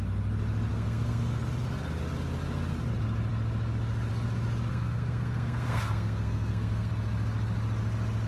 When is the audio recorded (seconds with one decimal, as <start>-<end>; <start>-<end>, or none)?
0.0-0.7; 1.4-4.7; 6.9-8.3